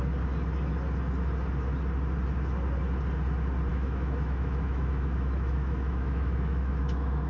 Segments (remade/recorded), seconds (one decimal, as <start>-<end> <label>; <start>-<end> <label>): 0.0-3.7 recorded; 3.7-7.3 remade